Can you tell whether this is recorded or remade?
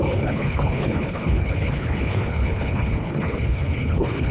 remade